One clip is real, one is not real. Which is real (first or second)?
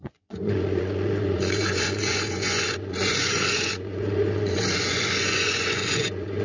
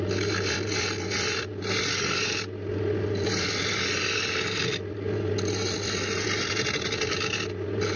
second